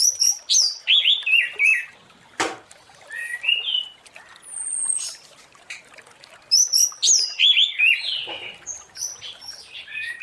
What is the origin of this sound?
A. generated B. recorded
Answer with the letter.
B